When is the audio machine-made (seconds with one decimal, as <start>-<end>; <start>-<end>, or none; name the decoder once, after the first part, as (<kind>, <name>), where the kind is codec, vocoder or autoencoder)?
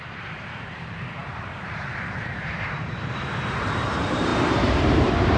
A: 0.0-5.4 (vocoder, BigVGAN v2)